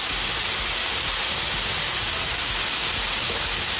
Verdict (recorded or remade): recorded